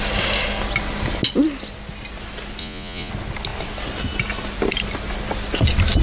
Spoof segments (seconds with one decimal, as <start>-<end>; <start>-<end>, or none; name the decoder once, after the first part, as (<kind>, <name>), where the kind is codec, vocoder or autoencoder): 2.6-3.1 (vocoder, Vocos)